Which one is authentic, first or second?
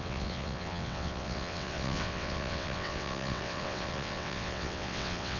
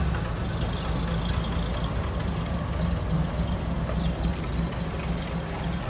second